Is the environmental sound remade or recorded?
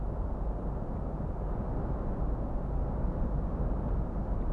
recorded